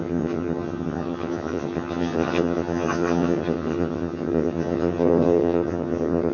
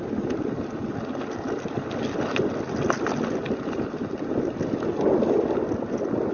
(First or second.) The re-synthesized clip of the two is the first